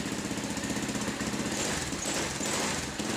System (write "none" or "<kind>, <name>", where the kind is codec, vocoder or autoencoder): none